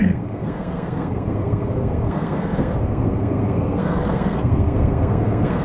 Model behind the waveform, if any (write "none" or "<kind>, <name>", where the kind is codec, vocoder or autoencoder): codec, SNAC